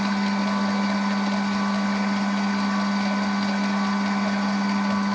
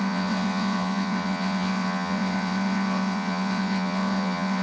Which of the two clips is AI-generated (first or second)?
second